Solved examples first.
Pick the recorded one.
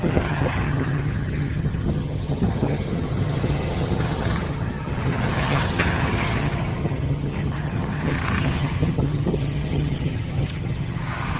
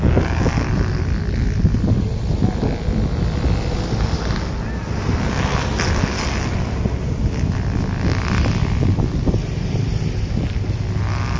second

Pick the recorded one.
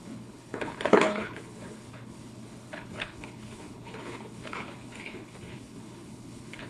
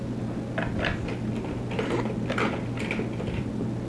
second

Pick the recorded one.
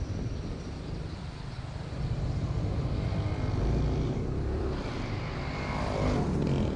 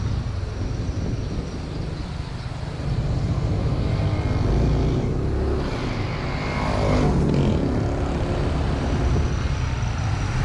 second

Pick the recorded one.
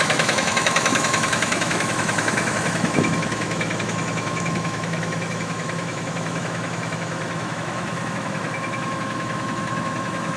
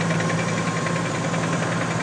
second